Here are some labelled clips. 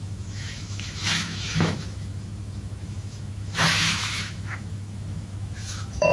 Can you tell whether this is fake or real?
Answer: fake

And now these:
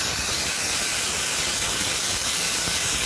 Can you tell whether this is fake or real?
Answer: fake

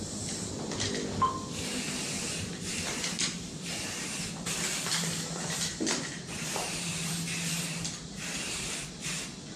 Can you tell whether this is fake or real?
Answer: fake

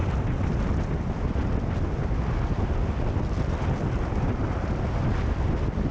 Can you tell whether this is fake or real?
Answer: real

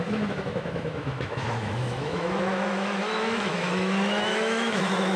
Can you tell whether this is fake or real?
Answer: fake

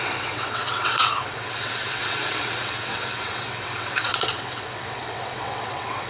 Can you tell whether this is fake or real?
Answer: fake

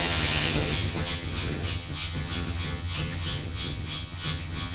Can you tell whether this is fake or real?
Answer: fake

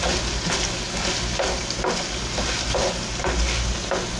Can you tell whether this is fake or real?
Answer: real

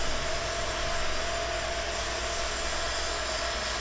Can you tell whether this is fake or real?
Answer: real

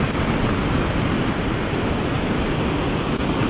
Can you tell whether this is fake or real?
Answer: real